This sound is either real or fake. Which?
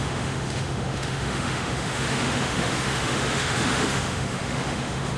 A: fake